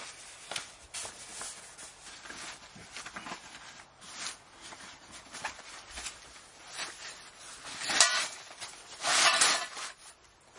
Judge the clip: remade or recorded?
recorded